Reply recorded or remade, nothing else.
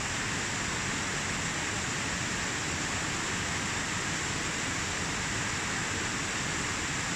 recorded